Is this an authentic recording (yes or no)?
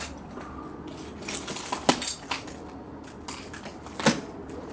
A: yes